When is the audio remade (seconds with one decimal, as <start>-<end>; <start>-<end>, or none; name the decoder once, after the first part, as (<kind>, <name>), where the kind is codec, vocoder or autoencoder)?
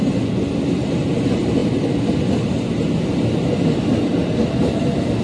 none